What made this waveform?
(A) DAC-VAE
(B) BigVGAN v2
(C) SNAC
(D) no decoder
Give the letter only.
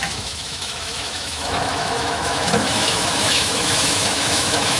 A